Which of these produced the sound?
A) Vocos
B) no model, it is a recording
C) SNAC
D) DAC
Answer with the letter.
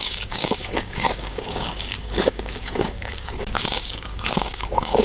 D